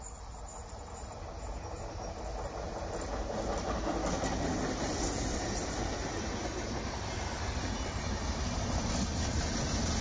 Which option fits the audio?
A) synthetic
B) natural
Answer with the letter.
B